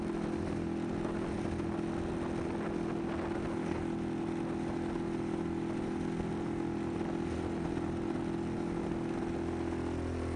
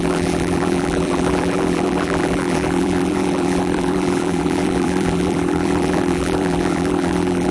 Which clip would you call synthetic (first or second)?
second